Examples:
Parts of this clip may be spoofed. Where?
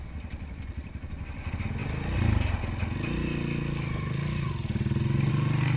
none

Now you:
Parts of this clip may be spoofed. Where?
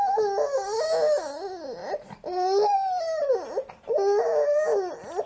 none